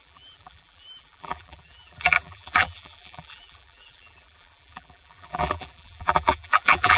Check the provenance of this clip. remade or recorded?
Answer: remade